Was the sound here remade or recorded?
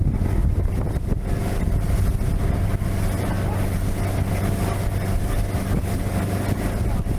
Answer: recorded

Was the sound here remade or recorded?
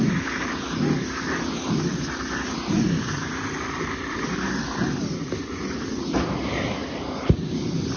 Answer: remade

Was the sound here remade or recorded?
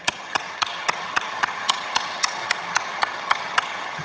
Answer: remade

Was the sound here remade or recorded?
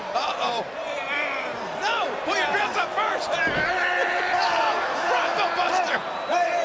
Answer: remade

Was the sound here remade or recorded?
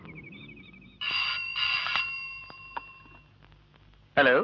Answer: recorded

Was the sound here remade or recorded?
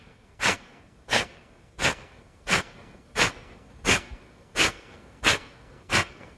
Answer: remade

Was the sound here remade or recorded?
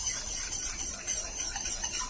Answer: recorded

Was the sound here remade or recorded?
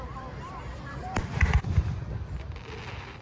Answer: remade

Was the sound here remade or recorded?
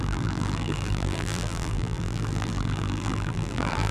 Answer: remade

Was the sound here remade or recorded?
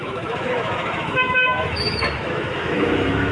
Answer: remade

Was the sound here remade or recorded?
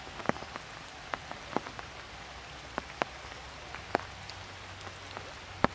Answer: recorded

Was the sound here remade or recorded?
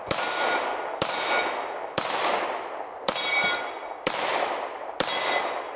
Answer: recorded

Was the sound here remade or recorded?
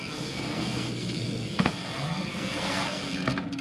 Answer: remade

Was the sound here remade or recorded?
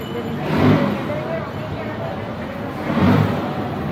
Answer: recorded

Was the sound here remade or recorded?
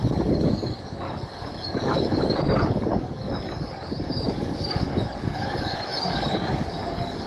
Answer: remade